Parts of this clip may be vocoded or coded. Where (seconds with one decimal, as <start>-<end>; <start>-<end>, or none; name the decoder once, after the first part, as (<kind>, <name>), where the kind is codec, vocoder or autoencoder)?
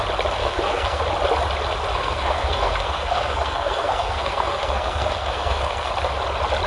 0.4-1.0 (codec, SNAC); 1.9-5.9